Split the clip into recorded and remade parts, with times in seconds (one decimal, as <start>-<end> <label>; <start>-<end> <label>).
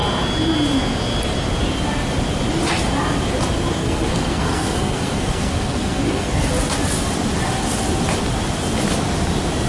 0.0-3.8 recorded; 3.8-6.5 remade; 6.5-9.7 recorded